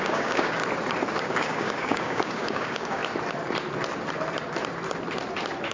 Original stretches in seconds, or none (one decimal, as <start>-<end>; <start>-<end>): 0.6-1.2; 3.0-5.7